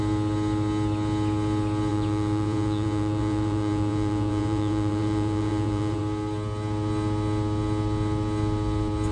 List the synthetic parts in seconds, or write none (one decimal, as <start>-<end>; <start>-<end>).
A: 1.9-6.0